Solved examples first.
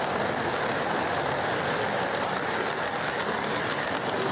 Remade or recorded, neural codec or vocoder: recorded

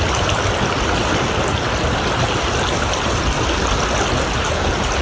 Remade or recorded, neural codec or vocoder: recorded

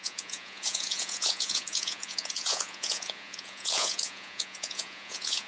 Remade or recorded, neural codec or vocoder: remade, vocoder, Vocos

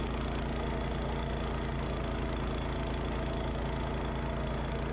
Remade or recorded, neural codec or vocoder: recorded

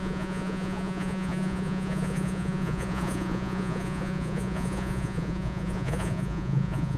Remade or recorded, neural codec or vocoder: remade, vocoder, Vocos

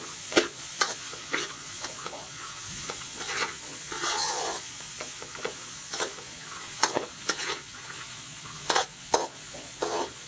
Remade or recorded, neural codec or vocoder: remade, vocoder, Vocos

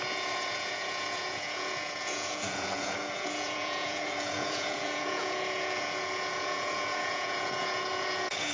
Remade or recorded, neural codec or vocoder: remade, vocoder, Vocos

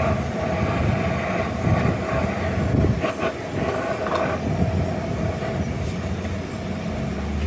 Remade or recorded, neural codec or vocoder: recorded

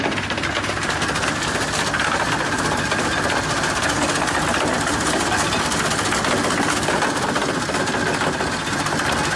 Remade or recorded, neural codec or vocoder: recorded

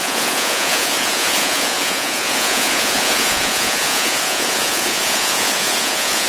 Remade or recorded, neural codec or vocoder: remade, vocoder, Vocos